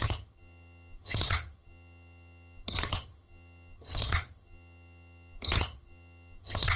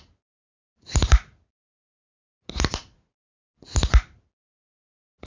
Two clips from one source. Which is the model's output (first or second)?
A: first